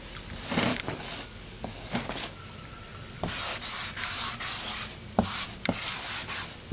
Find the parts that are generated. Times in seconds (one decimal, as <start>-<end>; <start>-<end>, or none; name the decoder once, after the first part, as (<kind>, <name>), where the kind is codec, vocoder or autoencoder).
0.7-2.4 (codec, DAC)